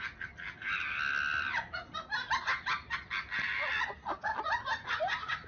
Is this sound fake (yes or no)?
no